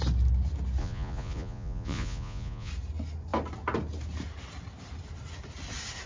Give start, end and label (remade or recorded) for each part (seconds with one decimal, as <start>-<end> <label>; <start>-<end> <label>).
0.0-0.8 recorded; 0.8-2.7 remade; 2.7-6.1 recorded